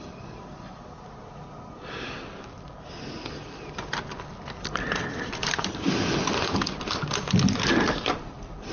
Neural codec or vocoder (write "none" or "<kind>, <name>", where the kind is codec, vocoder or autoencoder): none